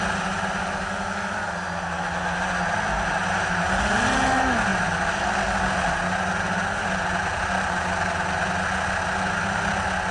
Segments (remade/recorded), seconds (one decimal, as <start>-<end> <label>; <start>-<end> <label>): 0.0-10.1 recorded